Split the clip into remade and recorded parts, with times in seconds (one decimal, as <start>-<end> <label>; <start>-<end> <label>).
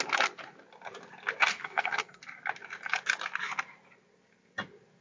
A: 0.0-1.5 recorded; 1.5-2.2 remade; 2.2-5.0 recorded